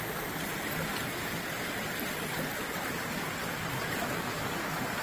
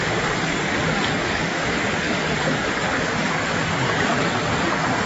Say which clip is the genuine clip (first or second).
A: first